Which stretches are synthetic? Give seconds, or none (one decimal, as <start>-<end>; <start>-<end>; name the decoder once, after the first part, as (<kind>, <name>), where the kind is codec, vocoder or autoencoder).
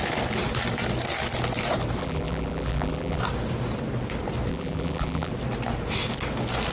2.0-3.2 (vocoder, BigVGAN v2); 4.5-5.3